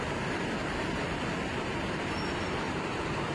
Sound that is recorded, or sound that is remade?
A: recorded